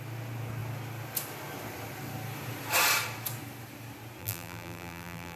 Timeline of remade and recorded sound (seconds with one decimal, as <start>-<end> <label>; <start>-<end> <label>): 0.0-4.2 recorded; 4.2-5.4 remade